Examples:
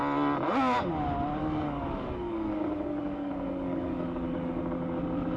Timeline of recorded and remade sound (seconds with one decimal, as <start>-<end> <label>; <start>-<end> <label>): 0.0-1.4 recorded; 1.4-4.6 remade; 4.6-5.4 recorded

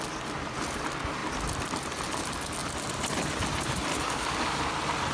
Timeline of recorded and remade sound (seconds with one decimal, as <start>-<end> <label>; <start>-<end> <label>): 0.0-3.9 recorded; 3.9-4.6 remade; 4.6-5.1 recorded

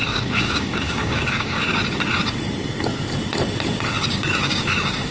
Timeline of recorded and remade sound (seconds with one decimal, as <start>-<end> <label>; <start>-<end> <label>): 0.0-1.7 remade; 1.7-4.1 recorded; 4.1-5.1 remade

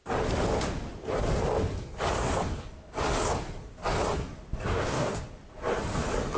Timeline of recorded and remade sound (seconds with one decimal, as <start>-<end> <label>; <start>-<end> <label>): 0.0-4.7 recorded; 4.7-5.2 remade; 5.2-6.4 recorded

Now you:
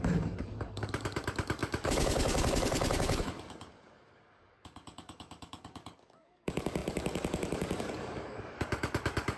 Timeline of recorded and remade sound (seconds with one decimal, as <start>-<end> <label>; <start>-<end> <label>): 0.0-9.4 remade

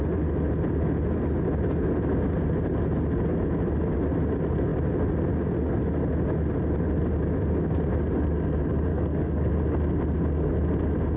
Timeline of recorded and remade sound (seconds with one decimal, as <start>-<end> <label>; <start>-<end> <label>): 0.0-8.9 recorded; 8.9-9.5 remade; 9.5-11.2 recorded